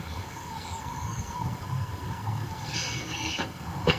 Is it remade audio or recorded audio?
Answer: remade